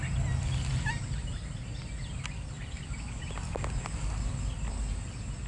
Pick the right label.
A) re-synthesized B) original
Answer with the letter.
B